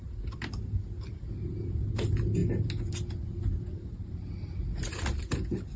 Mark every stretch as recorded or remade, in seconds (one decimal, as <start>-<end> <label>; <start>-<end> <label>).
0.0-5.8 recorded